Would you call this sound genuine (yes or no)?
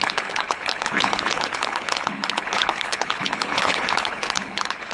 no